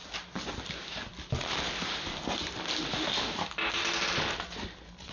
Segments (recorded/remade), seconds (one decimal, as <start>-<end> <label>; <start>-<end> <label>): 0.0-5.1 recorded